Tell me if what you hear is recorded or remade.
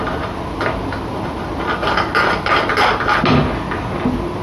recorded